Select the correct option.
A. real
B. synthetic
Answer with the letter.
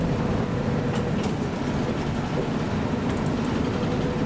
A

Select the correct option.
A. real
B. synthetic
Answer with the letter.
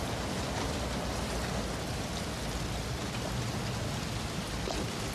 A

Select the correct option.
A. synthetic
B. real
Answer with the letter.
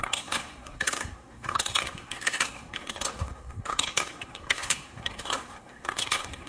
A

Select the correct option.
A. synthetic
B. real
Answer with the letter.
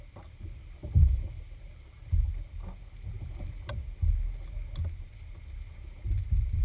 B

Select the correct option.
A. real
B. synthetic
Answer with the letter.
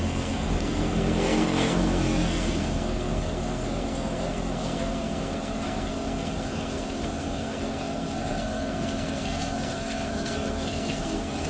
B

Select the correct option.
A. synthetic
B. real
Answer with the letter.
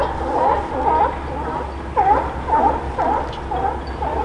B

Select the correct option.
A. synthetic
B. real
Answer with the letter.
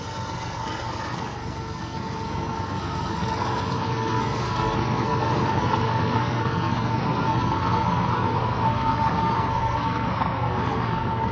A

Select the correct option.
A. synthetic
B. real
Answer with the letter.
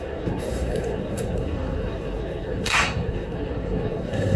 A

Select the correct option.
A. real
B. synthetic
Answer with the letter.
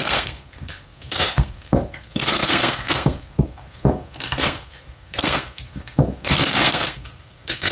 B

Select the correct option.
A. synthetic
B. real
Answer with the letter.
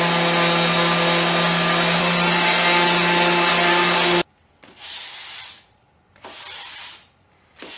B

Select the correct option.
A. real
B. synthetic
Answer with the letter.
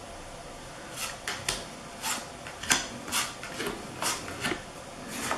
A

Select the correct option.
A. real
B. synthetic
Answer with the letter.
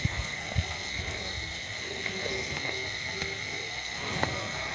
B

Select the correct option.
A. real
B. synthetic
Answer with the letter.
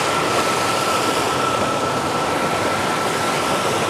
A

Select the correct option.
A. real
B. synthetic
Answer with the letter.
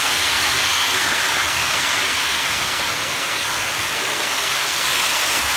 B